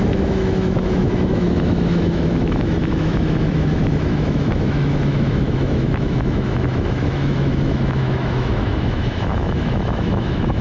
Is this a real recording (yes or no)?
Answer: no